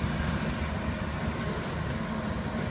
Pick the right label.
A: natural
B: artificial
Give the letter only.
A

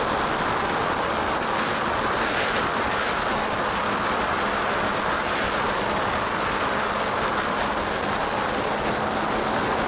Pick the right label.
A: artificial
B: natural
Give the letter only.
B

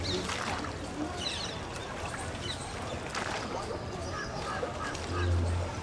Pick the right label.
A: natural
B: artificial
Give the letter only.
A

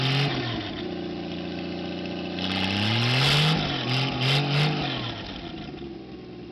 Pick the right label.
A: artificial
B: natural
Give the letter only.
B